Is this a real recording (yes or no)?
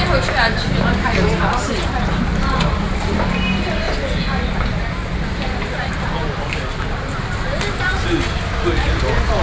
yes